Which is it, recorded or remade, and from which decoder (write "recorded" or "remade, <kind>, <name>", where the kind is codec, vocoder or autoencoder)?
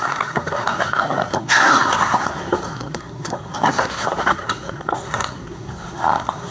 remade, codec, SNAC